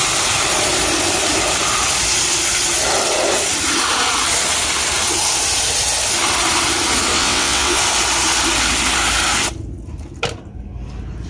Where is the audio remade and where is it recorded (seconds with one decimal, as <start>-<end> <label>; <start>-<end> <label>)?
0.0-7.1 recorded; 7.1-7.8 remade; 7.8-11.3 recorded